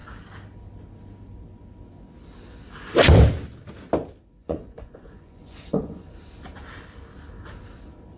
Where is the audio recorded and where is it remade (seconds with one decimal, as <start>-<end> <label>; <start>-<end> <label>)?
0.0-4.4 recorded; 4.4-6.1 remade; 6.1-8.2 recorded

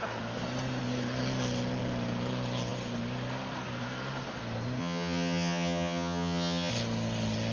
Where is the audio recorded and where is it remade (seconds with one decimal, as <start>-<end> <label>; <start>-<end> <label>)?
0.0-4.8 recorded; 4.8-6.7 remade; 6.7-7.5 recorded

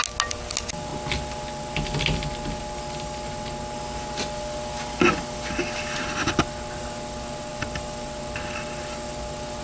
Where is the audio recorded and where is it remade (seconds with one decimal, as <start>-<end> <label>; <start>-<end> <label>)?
0.0-9.6 recorded

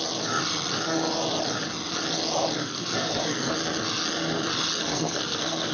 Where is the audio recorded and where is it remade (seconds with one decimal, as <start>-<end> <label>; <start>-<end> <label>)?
0.0-2.6 recorded; 2.6-3.5 remade; 3.5-4.8 recorded; 4.8-5.7 remade

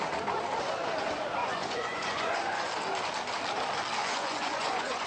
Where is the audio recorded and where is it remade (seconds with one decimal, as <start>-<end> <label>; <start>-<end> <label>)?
0.0-1.4 recorded; 1.4-2.7 remade; 2.7-4.0 recorded; 4.0-5.1 remade

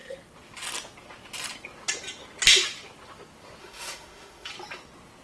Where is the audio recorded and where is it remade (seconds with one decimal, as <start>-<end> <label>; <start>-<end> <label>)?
0.0-3.6 recorded; 3.6-4.5 remade; 4.5-5.2 recorded

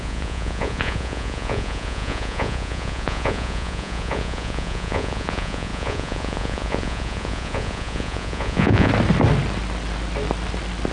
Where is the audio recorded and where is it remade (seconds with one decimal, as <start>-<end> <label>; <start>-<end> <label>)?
0.0-8.9 remade; 8.9-10.9 recorded